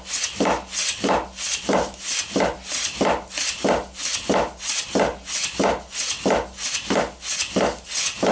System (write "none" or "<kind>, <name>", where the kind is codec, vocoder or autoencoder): none